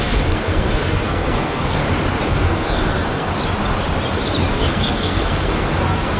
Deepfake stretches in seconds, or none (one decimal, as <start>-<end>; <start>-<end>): 0.0-1.8; 2.3-3.3; 4.5-6.2